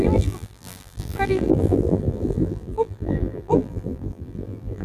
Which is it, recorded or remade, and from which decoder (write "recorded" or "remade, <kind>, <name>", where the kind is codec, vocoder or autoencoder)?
remade, vocoder, BigVGAN v2